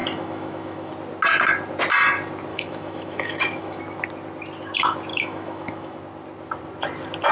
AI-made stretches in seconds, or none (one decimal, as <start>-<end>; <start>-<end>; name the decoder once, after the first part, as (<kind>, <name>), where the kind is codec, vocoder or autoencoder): 0.0-0.9 (autoencoder, DAC-VAE); 2.5-3.8; 5.1-6.0